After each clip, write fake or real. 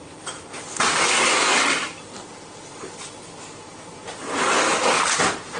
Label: real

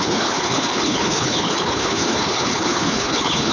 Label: fake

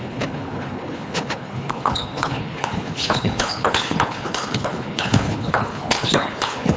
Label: fake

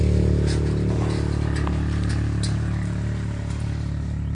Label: real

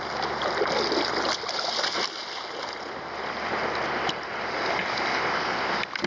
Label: real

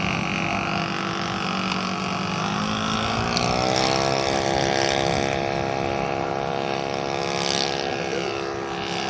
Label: real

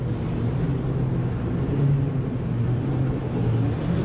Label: real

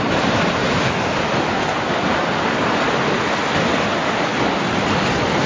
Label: real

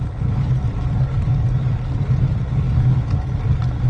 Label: real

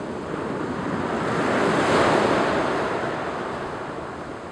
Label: real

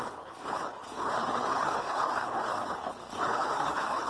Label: fake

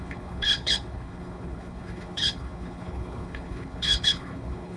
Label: fake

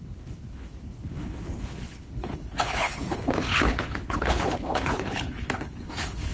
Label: fake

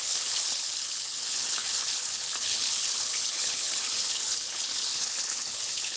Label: fake